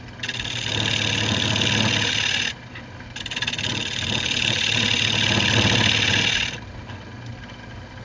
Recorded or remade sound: recorded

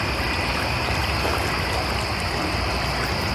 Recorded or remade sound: recorded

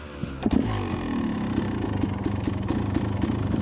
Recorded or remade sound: recorded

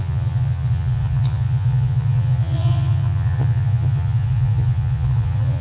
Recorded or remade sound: remade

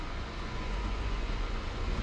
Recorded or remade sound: remade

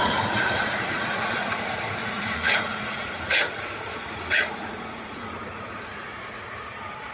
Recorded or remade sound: remade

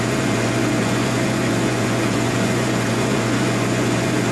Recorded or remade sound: remade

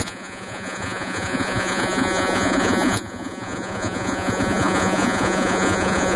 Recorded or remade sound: remade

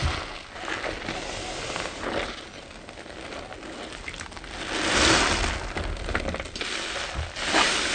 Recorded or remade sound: recorded